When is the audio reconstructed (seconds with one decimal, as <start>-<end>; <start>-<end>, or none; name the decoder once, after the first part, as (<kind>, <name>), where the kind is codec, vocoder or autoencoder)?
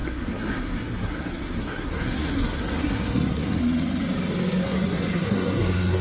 0.0-3.6 (codec, SNAC); 4.6-6.0